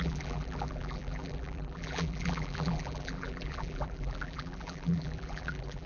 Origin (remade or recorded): remade